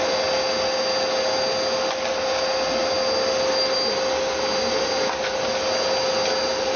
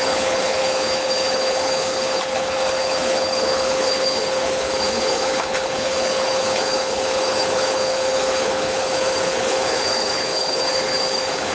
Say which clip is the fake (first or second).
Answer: second